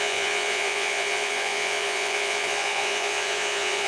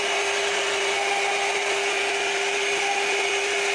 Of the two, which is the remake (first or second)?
first